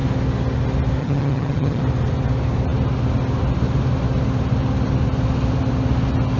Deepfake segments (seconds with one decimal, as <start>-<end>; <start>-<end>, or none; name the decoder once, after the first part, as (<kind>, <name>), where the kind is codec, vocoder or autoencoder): 1.0-1.8 (vocoder, HiFi-GAN)